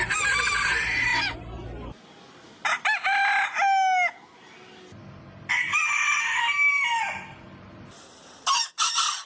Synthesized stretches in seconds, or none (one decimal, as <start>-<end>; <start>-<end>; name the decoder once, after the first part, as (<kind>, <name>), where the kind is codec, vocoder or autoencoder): none